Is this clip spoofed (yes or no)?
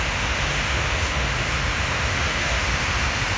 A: yes